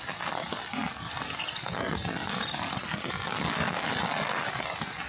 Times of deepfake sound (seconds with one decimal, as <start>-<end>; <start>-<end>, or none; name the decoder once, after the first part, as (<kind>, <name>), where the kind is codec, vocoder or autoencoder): none